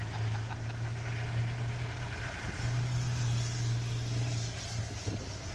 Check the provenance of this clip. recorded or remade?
recorded